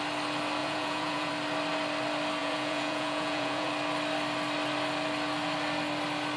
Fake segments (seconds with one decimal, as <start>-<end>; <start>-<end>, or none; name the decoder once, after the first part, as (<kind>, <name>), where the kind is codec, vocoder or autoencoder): 0.6-1.3 (vocoder, Vocos); 2.4-3.7